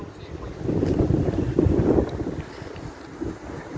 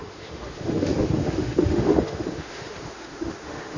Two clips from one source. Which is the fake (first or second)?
second